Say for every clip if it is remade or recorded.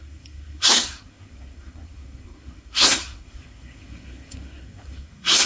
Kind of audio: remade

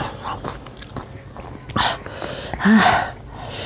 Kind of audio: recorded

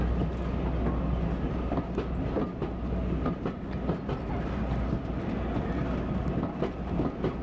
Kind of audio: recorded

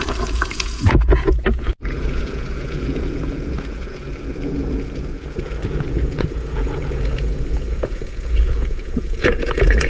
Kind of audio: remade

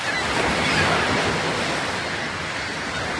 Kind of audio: recorded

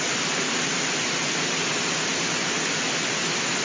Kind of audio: remade